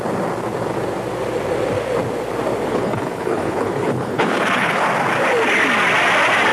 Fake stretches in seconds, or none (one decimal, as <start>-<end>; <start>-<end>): 2.7-4.8